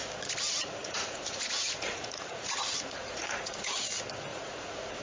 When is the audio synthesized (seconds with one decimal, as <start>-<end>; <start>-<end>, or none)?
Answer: 0.8-3.8; 4.3-5.0